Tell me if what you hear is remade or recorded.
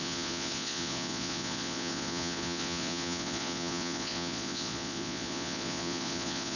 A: remade